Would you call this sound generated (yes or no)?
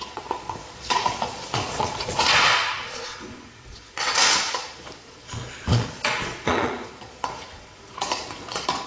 yes